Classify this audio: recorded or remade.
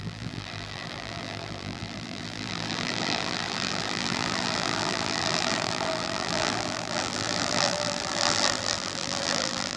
remade